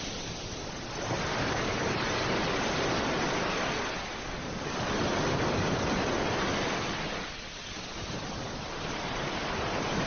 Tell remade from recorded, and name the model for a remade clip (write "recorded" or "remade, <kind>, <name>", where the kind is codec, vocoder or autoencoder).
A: recorded